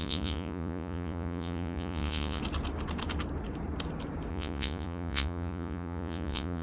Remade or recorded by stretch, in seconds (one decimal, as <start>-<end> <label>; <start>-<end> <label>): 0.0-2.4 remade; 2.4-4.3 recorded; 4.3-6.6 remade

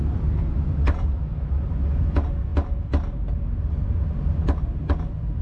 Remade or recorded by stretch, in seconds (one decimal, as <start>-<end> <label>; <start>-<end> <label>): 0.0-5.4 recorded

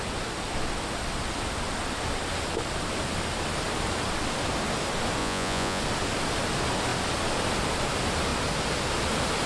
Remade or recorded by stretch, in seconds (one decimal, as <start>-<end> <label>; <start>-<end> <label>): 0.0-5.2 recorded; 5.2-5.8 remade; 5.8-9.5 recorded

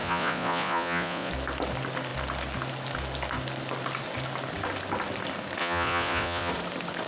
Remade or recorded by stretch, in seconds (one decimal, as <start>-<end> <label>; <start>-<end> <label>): 0.0-1.3 remade; 1.3-5.6 recorded; 5.6-6.5 remade; 6.5-7.1 recorded

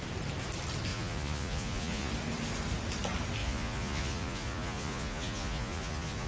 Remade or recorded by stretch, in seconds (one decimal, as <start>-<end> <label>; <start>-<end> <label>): 0.0-0.9 recorded; 0.9-2.1 remade; 2.1-3.4 recorded; 3.4-6.3 remade